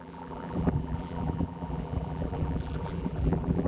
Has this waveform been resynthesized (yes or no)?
yes